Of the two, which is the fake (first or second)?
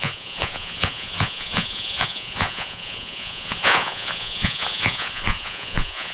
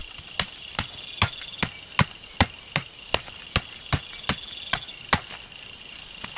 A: first